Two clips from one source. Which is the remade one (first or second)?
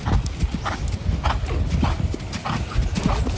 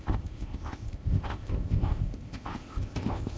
second